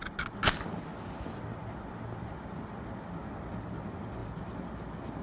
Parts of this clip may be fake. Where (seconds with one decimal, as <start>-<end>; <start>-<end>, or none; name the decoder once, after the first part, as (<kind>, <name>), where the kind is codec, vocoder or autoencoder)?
1.6-3.2 (vocoder, BigVGAN v2); 4.2-4.8